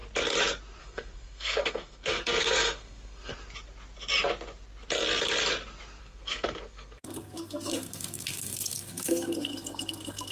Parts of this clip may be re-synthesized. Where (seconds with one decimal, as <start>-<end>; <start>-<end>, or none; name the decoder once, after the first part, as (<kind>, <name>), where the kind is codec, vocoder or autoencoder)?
0.8-3.3 (codec, SNAC); 6.0-10.3